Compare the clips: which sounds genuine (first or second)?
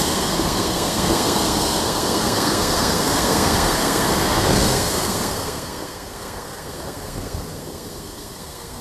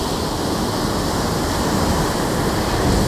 second